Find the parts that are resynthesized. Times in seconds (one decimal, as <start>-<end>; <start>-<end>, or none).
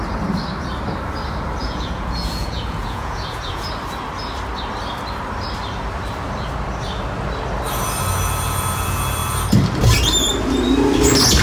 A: 1.6-3.7